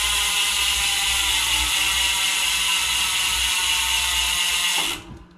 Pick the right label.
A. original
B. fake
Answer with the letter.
A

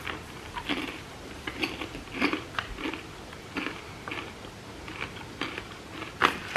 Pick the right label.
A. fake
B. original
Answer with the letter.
B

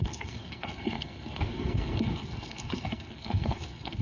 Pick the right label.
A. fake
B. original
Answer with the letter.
A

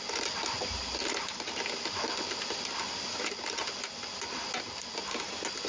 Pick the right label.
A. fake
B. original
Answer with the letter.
B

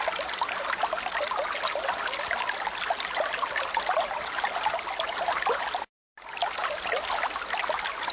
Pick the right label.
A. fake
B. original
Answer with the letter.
B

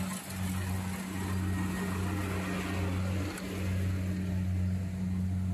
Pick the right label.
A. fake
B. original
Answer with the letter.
B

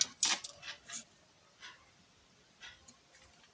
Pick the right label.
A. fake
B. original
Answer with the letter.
B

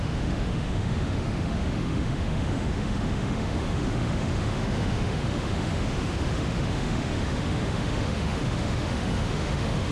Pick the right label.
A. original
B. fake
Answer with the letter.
B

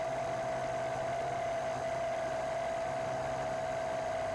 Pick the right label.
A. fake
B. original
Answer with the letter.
B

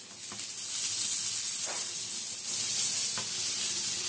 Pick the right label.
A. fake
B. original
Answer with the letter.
B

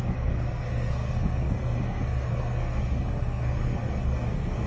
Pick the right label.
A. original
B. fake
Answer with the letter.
B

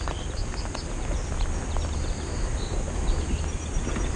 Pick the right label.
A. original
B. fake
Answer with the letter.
A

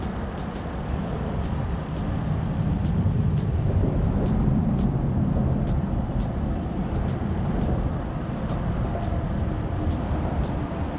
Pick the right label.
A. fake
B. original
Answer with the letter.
A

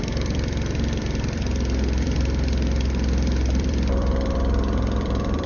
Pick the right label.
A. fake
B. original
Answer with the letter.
A